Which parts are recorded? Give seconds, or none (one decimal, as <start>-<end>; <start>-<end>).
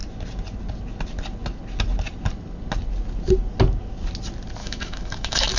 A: 0.0-4.6